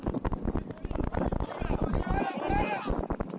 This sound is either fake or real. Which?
real